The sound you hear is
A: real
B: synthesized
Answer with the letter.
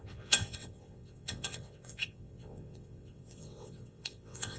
B